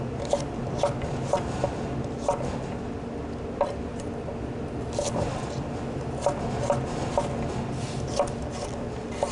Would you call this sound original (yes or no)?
yes